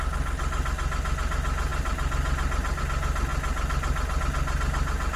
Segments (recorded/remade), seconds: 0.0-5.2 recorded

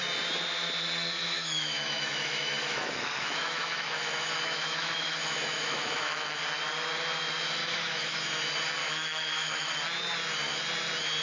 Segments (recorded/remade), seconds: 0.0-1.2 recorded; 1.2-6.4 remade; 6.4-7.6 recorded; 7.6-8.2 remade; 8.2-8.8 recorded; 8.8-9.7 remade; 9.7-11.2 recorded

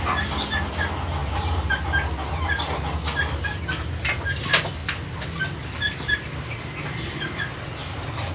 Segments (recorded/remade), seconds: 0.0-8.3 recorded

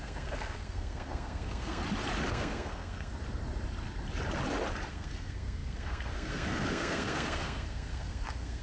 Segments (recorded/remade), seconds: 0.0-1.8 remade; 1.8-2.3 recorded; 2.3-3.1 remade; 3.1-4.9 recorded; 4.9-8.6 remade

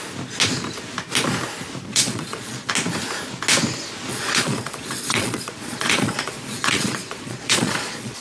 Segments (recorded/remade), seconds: 0.0-1.9 recorded; 1.9-2.7 remade; 2.7-4.1 recorded; 4.1-8.2 remade

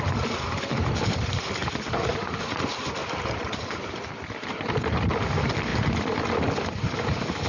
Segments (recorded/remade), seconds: 0.0-1.6 remade; 1.6-2.1 recorded; 2.1-7.5 remade

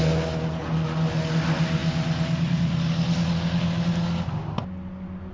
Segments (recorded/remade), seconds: 0.0-5.3 recorded

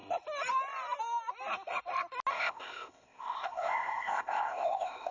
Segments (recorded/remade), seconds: 0.0-2.3 recorded; 2.3-5.1 remade